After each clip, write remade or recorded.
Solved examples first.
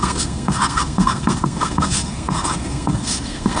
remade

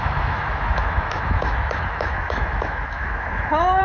remade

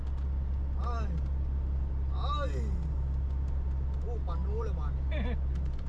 recorded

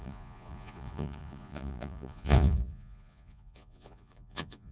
remade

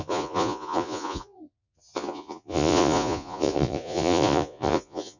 remade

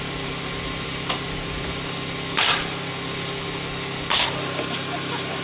recorded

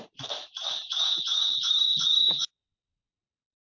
remade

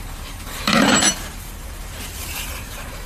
remade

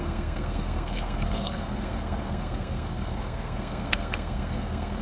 remade